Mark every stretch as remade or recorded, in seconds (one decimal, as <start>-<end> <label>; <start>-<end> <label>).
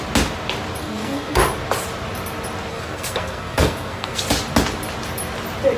0.0-0.8 recorded; 0.8-1.4 remade; 1.4-2.7 recorded; 2.7-4.2 remade; 4.2-5.8 recorded